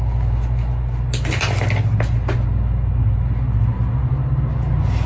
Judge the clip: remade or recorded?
recorded